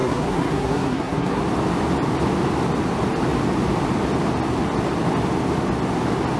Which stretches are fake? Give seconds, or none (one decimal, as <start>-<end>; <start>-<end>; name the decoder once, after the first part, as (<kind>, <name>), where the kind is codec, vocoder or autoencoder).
0.0-1.4 (codec, SNAC)